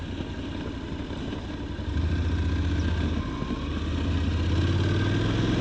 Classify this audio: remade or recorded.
recorded